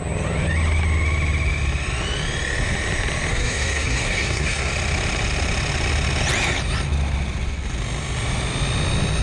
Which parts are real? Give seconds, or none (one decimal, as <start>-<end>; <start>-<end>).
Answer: 0.0-3.3; 4.7-9.2